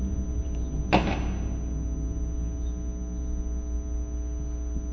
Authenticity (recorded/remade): recorded